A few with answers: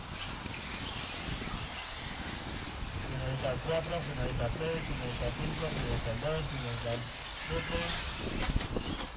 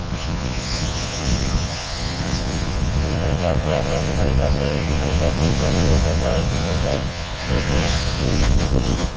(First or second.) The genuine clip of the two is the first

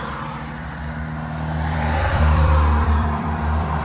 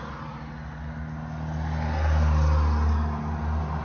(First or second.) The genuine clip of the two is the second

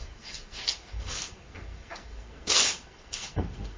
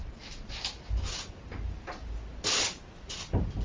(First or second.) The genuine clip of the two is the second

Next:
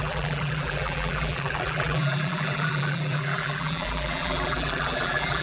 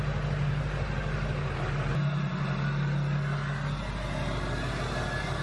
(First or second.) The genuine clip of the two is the second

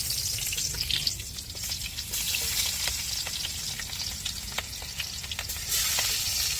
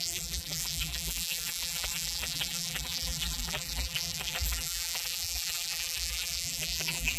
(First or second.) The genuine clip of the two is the first